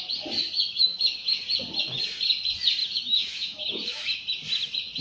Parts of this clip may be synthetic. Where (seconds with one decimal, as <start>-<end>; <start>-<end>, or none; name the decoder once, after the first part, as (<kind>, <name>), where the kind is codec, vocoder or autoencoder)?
0.7-1.4 (autoencoder, DAC-VAE); 2.8-4.2